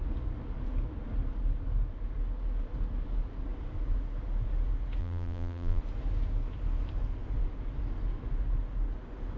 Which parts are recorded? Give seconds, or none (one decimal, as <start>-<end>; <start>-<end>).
0.0-5.0; 5.8-9.4